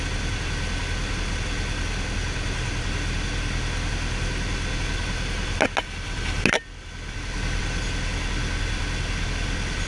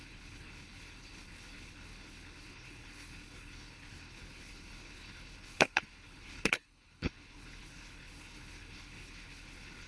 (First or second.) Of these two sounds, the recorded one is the first